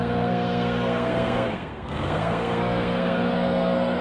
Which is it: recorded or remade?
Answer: remade